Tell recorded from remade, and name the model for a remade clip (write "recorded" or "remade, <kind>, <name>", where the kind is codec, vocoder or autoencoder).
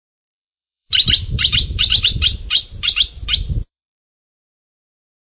remade, vocoder, BigVGAN v2